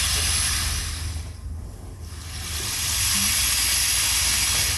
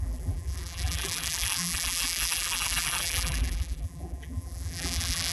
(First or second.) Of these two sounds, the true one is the first